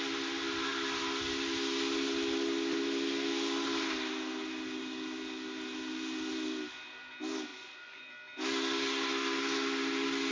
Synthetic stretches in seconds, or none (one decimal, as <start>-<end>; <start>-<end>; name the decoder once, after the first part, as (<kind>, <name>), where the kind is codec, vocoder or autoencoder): 7.5-8.0 (vocoder, Vocos)

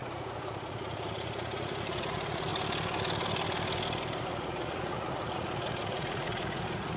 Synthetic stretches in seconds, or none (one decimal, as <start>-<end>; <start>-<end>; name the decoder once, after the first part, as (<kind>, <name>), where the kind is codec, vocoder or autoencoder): 0.0-2.5 (vocoder, Vocos); 4.2-7.0